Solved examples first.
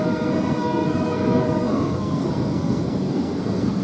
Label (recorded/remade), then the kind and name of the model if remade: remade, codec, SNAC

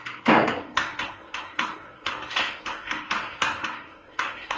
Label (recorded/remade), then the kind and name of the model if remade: remade, codec, SNAC